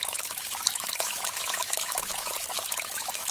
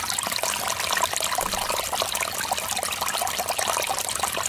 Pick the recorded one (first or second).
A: second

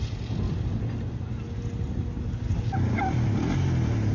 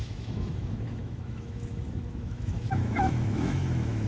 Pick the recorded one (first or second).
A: first